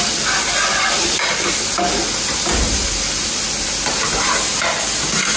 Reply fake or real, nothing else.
fake